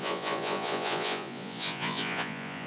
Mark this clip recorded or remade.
remade